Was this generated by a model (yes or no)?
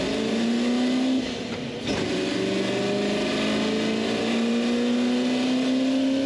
no